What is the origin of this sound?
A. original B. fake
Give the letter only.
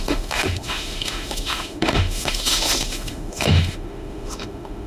B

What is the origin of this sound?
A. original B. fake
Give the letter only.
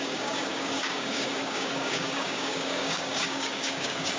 B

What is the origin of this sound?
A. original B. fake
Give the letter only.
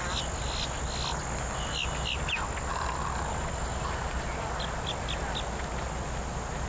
A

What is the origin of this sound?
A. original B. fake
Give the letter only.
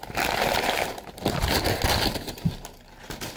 A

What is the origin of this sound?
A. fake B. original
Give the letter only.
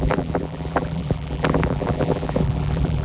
A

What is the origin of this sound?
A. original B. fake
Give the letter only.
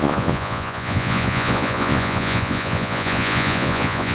B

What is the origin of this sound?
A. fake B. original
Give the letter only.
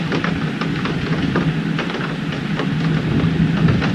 B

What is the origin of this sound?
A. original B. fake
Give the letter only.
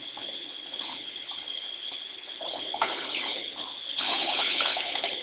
B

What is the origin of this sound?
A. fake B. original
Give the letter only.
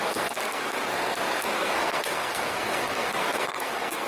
A